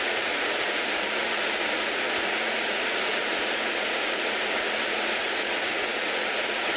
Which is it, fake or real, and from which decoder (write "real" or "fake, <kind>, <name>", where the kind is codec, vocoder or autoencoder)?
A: fake, vocoder, Vocos